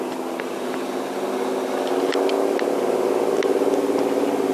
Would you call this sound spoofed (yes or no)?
no